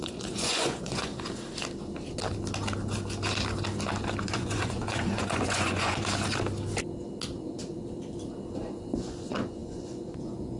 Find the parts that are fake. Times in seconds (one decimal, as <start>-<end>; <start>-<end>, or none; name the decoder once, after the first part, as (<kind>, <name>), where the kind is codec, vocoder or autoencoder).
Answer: 0.0-1.1 (vocoder, Vocos); 4.2-6.0; 8.6-10.6